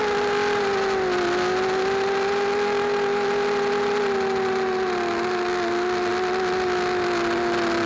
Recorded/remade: recorded